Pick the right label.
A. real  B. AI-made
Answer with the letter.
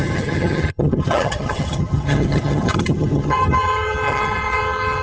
B